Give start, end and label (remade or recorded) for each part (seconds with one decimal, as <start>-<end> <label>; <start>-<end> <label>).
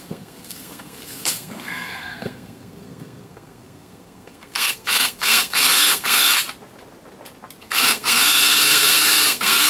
0.0-6.3 remade; 6.3-7.6 recorded; 7.6-9.7 remade